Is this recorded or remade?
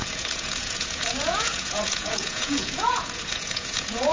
remade